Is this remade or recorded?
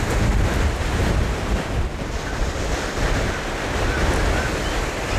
recorded